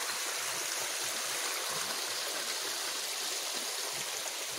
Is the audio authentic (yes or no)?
yes